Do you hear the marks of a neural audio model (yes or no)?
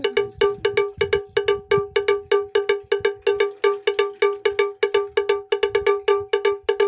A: no